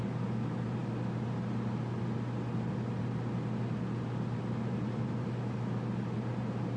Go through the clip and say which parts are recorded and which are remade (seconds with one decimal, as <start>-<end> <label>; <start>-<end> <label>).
0.0-6.8 recorded